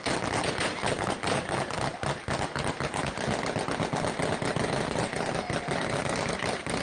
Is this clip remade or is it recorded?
recorded